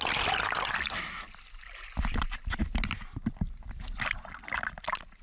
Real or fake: real